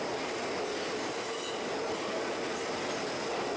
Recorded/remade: recorded